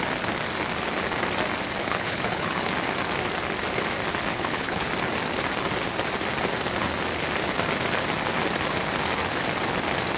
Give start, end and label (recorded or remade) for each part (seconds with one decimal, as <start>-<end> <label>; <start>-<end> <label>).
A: 0.0-1.8 recorded; 1.8-2.7 remade; 2.7-4.3 recorded; 4.3-4.9 remade; 4.9-10.2 recorded